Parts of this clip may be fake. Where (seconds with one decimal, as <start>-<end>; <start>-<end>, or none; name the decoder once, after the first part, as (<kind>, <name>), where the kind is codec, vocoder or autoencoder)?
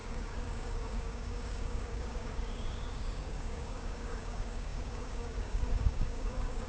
0.0-6.7 (codec, DAC)